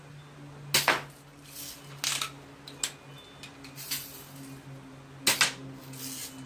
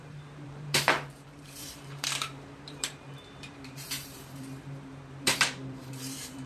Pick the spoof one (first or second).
second